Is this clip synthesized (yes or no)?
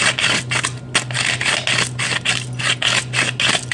no